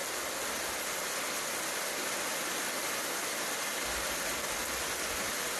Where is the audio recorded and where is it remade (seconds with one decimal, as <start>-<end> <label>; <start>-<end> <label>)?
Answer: 0.0-5.6 recorded